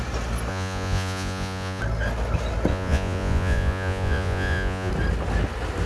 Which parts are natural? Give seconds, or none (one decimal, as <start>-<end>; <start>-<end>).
0.0-0.5; 1.8-2.7; 4.9-5.9